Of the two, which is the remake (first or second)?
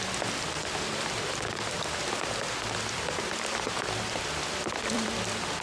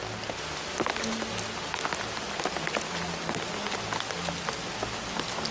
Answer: first